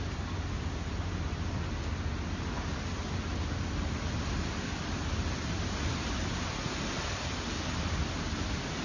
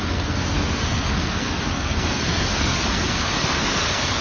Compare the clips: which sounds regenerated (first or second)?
second